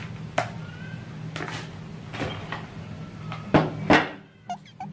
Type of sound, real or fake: real